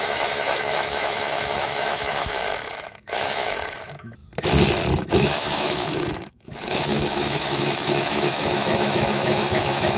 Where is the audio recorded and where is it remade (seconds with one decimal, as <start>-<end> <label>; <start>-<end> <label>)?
0.0-4.2 remade; 4.2-5.0 recorded; 5.0-10.0 remade

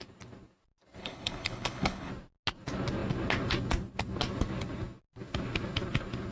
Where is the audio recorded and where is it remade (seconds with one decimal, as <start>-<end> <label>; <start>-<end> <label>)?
0.0-1.0 recorded; 1.0-2.1 remade; 2.1-6.3 recorded

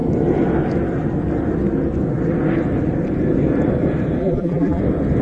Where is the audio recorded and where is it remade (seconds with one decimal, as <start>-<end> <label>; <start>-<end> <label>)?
0.0-4.2 recorded; 4.2-4.8 remade; 4.8-5.2 recorded

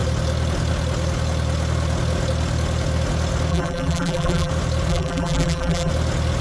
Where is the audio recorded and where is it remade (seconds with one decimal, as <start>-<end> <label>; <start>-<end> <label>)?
0.0-3.5 recorded; 3.5-4.5 remade; 4.5-4.9 recorded; 4.9-5.9 remade; 5.9-6.4 recorded